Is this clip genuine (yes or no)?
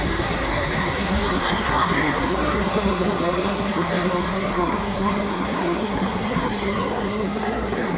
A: no